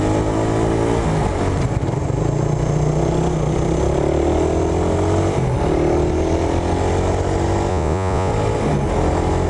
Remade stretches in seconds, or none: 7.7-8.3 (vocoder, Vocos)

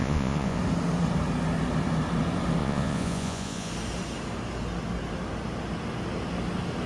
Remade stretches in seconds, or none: 0.0-0.6 (vocoder, Vocos); 2.6-3.7

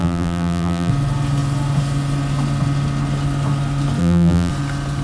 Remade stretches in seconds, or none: 0.0-0.9 (vocoder, BigVGAN v2); 4.0-4.5

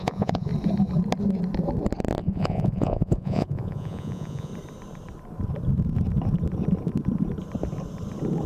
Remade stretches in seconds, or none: 0.0-0.5 (vocoder, Vocos); 2.2-4.5

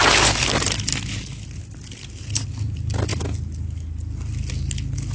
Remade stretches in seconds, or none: none